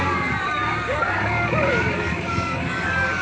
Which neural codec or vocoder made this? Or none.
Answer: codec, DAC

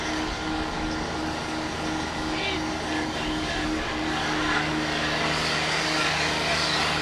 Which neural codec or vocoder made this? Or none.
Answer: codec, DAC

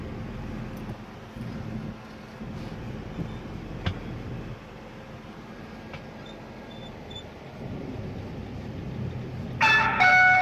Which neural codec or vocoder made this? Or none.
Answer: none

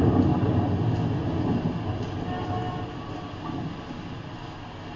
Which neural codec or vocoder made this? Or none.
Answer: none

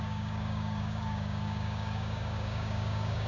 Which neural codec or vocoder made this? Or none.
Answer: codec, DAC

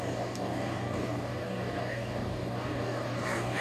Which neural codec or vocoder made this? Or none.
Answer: codec, DAC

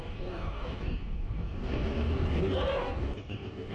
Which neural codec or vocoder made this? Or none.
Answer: codec, DAC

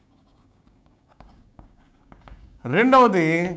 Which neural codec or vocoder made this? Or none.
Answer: codec, DAC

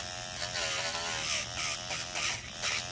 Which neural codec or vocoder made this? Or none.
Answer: none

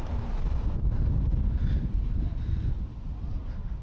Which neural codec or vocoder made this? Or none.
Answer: none